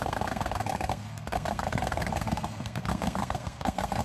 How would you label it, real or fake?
fake